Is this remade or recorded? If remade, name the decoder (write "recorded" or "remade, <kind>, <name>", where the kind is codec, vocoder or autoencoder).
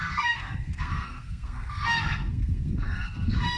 remade, codec, SNAC